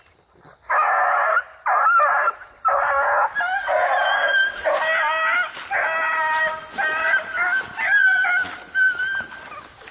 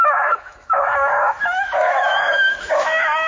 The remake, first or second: second